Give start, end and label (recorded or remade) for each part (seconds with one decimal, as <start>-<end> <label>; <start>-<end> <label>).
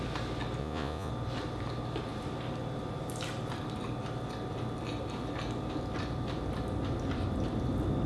0.0-0.6 recorded; 0.6-1.1 remade; 1.1-8.1 recorded